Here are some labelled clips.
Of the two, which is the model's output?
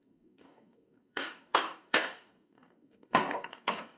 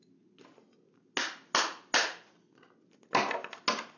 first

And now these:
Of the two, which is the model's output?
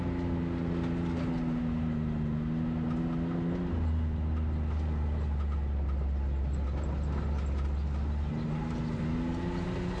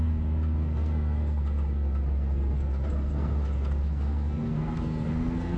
second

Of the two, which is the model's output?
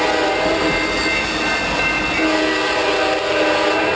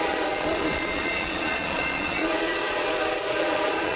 second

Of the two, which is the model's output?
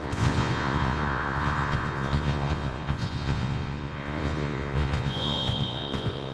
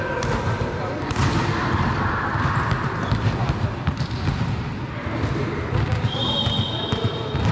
first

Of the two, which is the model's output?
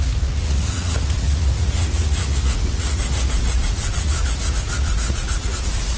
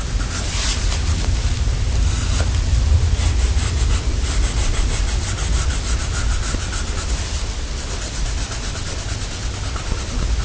first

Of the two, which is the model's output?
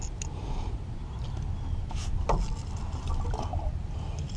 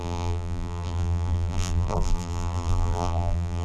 second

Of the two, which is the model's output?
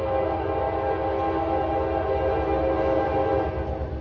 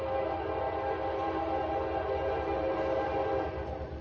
second